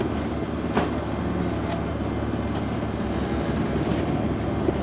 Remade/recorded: recorded